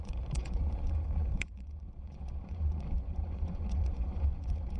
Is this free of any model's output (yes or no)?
no